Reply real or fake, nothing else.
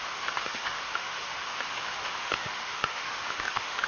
fake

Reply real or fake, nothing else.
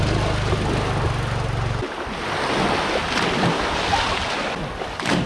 real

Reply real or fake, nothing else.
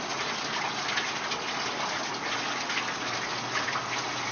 real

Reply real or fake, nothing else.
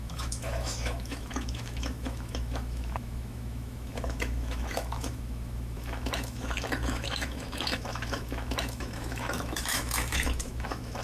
fake